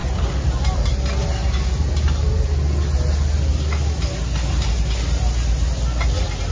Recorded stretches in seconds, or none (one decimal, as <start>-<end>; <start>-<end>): 0.0-6.5